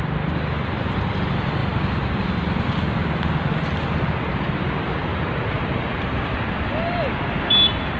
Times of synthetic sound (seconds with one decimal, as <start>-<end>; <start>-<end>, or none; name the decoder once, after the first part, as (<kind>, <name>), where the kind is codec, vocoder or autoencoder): 5.1-6.2 (vocoder, BigVGAN v2)